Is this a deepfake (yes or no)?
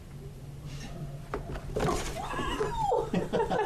no